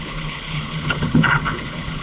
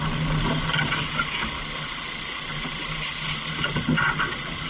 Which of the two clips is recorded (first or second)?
second